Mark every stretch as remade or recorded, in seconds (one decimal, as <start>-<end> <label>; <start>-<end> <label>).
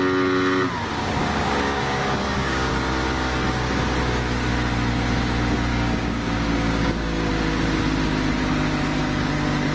0.0-0.9 recorded; 0.9-2.7 remade; 2.7-5.7 recorded; 5.7-7.3 remade; 7.3-9.7 recorded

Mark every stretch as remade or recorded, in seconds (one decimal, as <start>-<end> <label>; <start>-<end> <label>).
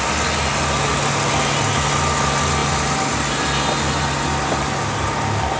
0.0-5.6 recorded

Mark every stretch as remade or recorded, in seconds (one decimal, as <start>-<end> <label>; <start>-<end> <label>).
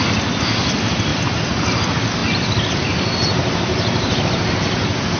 0.0-5.2 recorded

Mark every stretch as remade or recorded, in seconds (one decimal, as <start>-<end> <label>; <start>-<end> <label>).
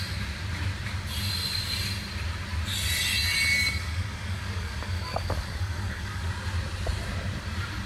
0.0-3.5 recorded; 3.5-6.3 remade; 6.3-7.9 recorded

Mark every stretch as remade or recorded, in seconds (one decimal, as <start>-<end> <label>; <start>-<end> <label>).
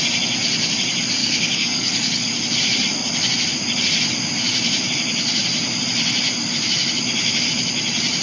0.0-1.2 recorded; 1.2-2.3 remade; 2.3-8.2 recorded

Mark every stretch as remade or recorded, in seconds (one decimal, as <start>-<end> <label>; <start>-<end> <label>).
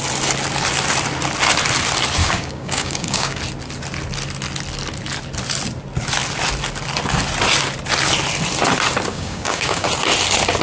0.0-2.2 recorded; 2.2-3.4 remade; 3.4-9.1 recorded; 9.1-9.9 remade; 9.9-10.6 recorded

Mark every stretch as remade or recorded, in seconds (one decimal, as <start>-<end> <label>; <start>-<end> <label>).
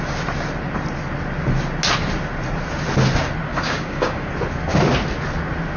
0.0-3.5 recorded; 3.5-4.3 remade; 4.3-5.8 recorded